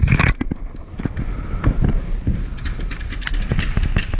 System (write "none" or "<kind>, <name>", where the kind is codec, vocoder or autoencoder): none